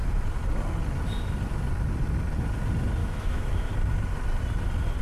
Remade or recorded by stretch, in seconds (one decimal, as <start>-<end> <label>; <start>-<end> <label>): 0.0-3.0 recorded; 3.0-3.7 remade; 3.7-5.0 recorded